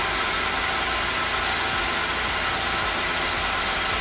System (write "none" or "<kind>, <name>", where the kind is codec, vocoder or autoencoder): none